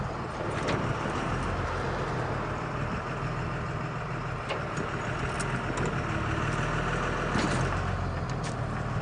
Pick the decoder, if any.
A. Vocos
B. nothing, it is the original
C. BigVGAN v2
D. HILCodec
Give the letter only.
B